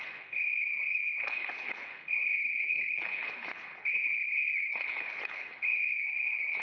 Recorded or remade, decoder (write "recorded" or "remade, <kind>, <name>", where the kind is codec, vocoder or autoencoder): remade, codec, HILCodec